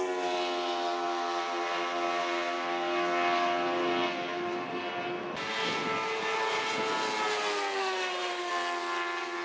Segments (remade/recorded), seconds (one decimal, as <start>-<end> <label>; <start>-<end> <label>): 0.0-7.8 recorded; 7.8-8.5 remade; 8.5-9.4 recorded